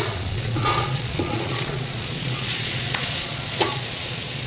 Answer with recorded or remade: remade